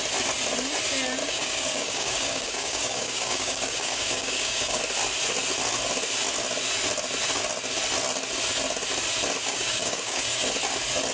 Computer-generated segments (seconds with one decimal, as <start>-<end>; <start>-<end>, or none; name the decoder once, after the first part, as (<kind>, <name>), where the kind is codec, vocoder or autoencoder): 1.2-4.8 (codec, DAC); 9.5-10.2